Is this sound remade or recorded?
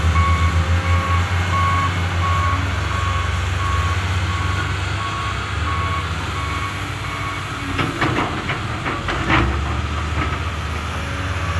recorded